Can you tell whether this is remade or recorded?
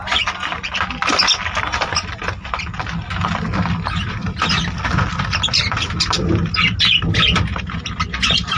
recorded